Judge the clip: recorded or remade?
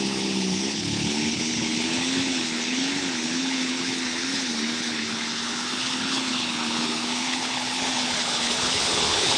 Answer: remade